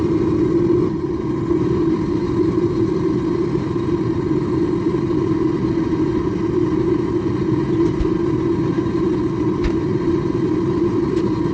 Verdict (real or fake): real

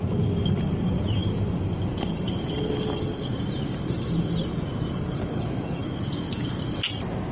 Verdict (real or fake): real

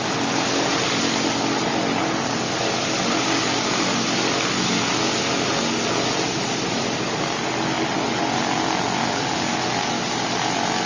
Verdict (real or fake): real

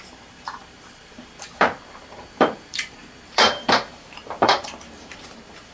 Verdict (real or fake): fake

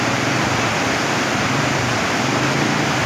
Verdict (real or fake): real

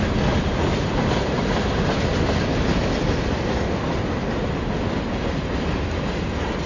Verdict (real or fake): real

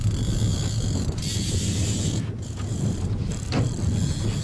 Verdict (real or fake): real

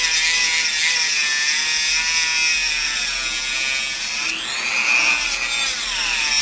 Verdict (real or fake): real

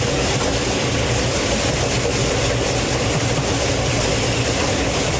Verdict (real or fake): fake